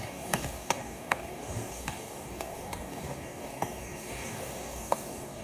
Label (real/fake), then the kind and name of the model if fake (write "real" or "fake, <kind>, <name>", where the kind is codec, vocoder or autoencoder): fake, codec, DAC